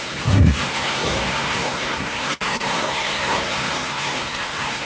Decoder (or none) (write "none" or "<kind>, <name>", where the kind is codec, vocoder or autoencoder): codec, SNAC